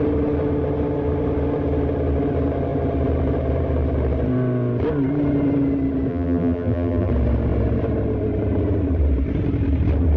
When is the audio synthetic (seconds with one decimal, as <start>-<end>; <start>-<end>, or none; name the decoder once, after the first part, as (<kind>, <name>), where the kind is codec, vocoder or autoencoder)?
6.1-7.1 (vocoder, BigVGAN v2)